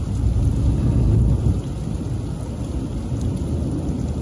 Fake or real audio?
real